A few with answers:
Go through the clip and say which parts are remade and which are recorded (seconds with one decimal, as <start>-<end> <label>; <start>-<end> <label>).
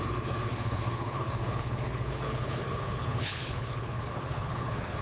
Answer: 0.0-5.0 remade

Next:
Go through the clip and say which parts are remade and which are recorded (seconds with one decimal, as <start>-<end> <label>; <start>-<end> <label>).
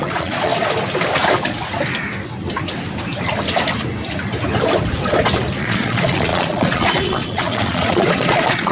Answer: 0.0-0.5 remade; 0.5-5.6 recorded; 5.6-8.7 remade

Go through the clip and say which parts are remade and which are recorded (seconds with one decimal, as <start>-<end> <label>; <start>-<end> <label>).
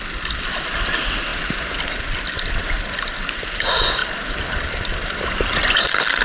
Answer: 0.0-6.2 remade